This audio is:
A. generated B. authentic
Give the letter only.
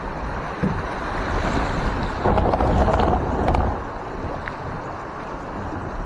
B